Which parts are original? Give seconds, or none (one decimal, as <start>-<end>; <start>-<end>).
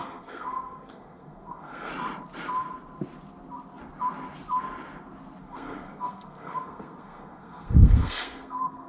1.9-5.4